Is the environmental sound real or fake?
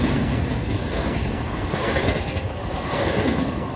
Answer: fake